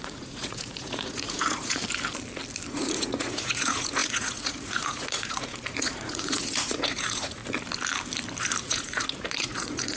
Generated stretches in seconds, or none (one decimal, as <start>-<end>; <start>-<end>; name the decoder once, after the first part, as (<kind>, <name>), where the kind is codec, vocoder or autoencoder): 0.0-1.8 (vocoder, Vocos); 2.7-7.4; 8.6-10.0